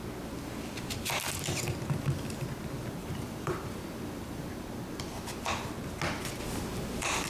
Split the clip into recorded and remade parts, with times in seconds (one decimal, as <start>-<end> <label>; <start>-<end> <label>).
0.0-3.0 recorded; 3.0-4.5 remade; 4.5-7.3 recorded